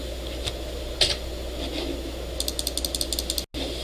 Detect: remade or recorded recorded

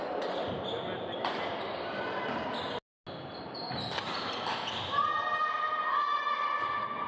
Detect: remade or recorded recorded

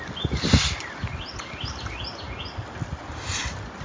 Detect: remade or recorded remade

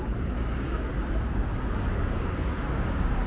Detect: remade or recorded remade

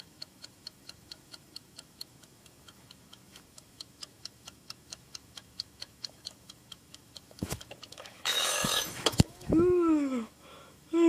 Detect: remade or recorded remade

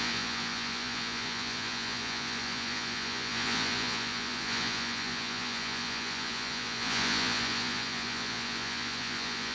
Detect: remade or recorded remade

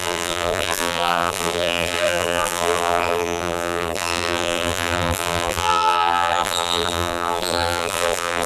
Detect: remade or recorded remade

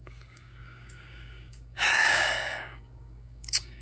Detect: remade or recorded remade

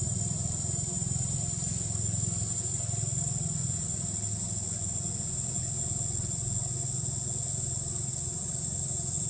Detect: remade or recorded recorded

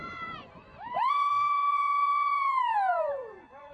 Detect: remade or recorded remade